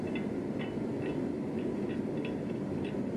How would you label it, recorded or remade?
recorded